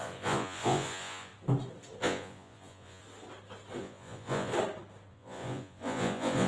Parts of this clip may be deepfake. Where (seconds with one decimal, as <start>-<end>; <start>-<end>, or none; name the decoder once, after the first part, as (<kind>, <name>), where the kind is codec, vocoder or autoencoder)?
0.0-1.3 (vocoder, Vocos); 2.0-3.0; 3.8-4.5; 5.1-6.5